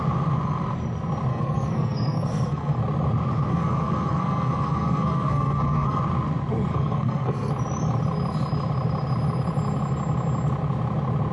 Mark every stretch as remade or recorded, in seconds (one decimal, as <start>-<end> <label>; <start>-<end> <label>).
0.0-1.3 recorded; 1.3-2.8 remade; 2.8-3.5 recorded; 3.5-6.0 remade; 6.0-6.7 recorded; 6.7-7.5 remade; 7.5-11.3 recorded